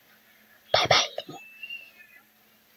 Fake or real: real